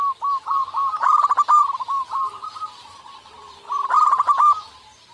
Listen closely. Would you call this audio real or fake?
fake